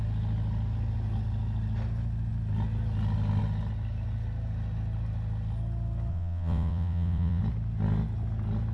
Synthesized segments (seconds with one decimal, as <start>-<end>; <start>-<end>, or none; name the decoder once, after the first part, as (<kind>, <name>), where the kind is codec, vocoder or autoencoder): 6.1-7.4 (vocoder, WaveNeXt)